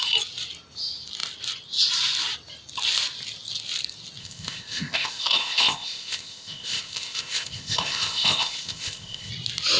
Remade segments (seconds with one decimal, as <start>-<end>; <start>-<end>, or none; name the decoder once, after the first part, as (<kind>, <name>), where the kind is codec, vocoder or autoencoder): 4.2-9.3 (codec, ZipCodec)